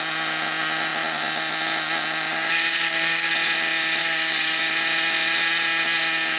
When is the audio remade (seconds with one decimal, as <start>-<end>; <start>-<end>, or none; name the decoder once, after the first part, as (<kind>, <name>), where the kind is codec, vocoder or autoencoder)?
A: 2.3-3.3 (codec, DAC); 4.0-4.6